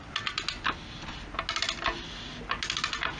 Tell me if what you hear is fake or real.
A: real